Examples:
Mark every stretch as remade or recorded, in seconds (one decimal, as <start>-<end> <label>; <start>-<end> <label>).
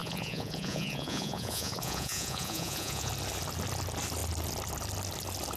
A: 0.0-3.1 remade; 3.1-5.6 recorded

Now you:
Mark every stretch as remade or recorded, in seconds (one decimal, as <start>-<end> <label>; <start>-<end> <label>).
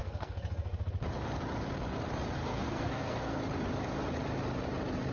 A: 0.0-0.8 remade; 0.8-2.4 recorded; 2.4-3.4 remade; 3.4-5.1 recorded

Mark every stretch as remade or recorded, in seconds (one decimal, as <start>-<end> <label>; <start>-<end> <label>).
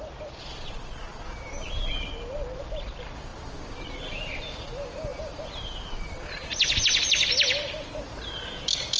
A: 0.0-9.0 recorded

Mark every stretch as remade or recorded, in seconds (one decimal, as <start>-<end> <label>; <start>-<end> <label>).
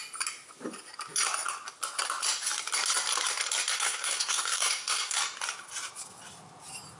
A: 0.0-3.7 recorded; 3.7-5.2 remade; 5.2-7.0 recorded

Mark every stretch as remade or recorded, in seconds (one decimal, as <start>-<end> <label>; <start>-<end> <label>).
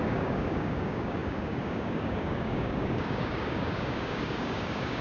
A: 0.0-5.0 remade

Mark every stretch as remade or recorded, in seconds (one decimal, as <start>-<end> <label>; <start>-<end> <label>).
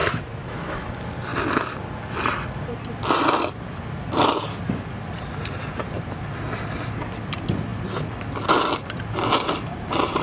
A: 0.0-0.9 remade; 0.9-10.2 recorded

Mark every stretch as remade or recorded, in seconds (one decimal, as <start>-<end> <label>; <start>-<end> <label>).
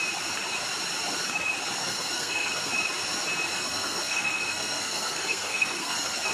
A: 0.0-1.8 recorded; 1.8-2.7 remade; 2.7-3.5 recorded; 3.5-6.3 remade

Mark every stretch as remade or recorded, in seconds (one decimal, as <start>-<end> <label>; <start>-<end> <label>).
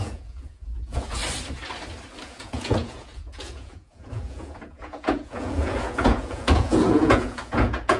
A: 0.0-1.2 remade; 1.2-2.2 recorded; 2.2-8.0 remade